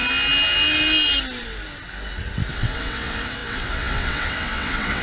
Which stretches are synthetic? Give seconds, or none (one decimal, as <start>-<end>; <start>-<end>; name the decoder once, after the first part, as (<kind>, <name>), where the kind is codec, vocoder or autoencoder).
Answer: 2.5-5.0 (vocoder, WaveNeXt)